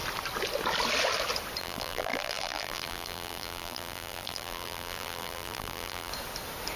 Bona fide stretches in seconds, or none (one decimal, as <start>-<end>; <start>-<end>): 0.0-1.6; 6.1-6.8